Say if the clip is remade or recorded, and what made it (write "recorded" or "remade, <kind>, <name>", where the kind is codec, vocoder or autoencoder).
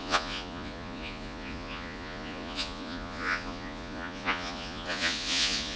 remade, vocoder, Vocos